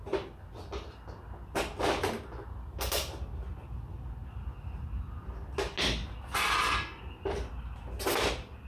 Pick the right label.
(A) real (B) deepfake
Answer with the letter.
A